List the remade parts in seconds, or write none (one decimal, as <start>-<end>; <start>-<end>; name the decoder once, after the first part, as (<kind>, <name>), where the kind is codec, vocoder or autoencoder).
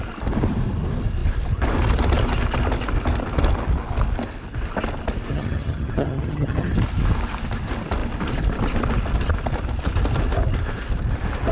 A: 5.3-6.7 (vocoder, HiFi-GAN)